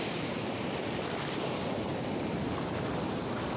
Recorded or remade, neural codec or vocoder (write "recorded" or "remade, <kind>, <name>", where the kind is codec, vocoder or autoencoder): remade, vocoder, BigVGAN v2